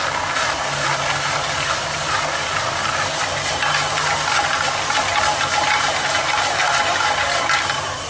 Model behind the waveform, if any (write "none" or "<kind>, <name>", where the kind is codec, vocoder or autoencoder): none